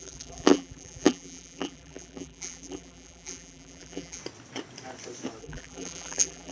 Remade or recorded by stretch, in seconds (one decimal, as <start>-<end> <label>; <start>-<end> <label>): 0.0-4.2 remade; 4.2-5.4 recorded; 5.4-6.5 remade